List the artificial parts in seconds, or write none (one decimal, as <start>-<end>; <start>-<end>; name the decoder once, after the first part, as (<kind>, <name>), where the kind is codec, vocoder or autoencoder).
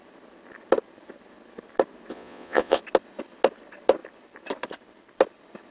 2.1-2.8 (vocoder, Vocos)